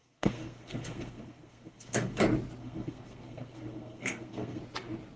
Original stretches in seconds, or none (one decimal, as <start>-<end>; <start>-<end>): 2.2-2.6; 4.6-5.2